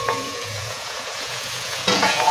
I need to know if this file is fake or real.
fake